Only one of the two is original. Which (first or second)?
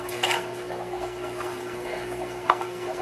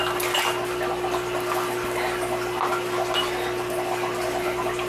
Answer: second